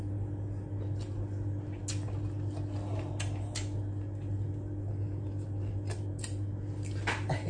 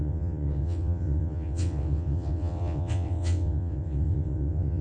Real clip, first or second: first